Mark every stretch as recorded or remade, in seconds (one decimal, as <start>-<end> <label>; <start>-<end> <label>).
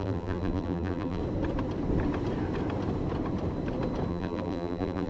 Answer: 0.0-1.2 remade; 1.2-4.1 recorded; 4.1-5.1 remade